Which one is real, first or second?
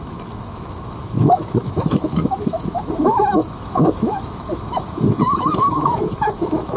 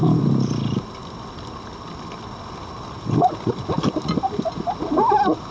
second